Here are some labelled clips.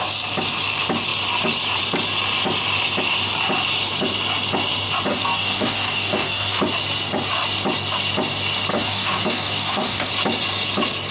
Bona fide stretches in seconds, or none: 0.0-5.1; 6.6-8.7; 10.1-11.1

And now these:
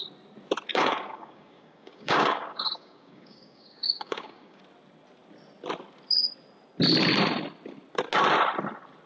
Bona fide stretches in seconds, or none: 0.0-0.7; 4.6-9.1

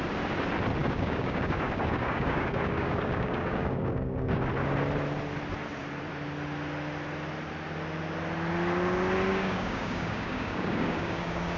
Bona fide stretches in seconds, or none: 0.0-0.8; 4.5-9.3

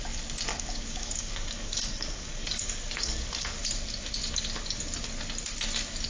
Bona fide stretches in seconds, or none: 0.0-0.5; 3.6-6.1

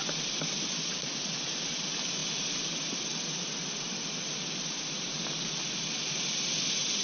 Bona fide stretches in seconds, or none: 0.0-7.0